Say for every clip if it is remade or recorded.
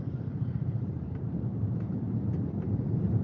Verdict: remade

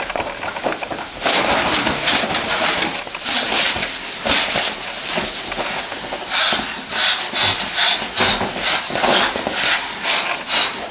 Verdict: recorded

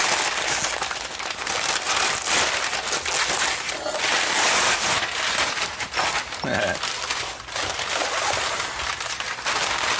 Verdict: recorded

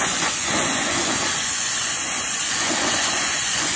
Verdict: remade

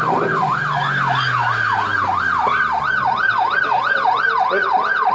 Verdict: recorded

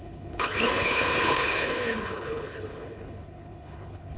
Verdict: remade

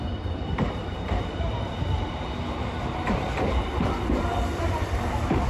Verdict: remade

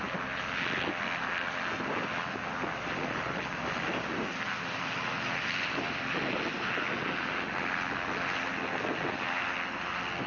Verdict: recorded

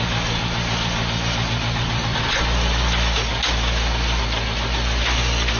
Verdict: recorded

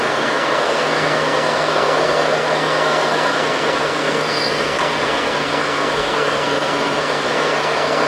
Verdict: remade